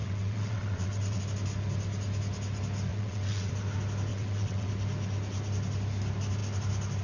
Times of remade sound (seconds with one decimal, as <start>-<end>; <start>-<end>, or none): 0.0-1.2; 2.9-3.5; 4.1-4.7